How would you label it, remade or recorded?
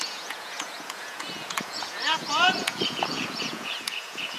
remade